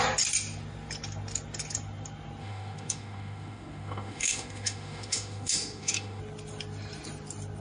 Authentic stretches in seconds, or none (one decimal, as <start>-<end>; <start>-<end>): 0.0-2.4; 6.2-7.6